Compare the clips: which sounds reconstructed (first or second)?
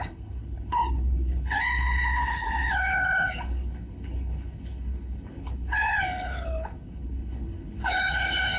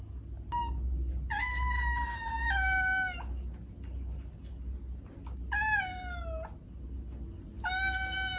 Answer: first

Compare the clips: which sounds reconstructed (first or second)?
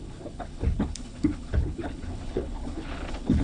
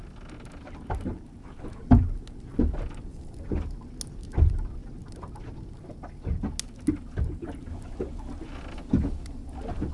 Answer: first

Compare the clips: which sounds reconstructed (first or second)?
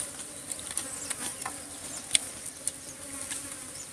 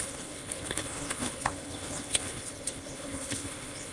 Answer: second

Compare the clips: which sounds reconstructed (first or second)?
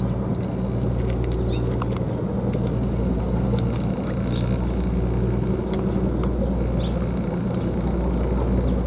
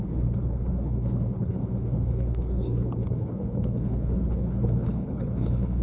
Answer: second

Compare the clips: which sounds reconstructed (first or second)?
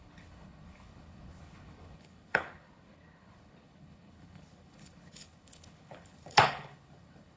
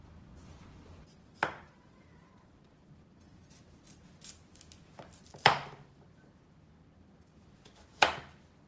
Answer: first